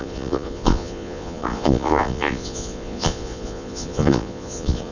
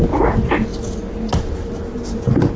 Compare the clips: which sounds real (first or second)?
second